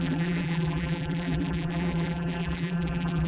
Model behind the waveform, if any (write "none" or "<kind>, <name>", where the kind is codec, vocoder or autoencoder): vocoder, BigVGAN v2